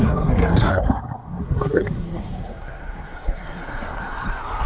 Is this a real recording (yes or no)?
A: no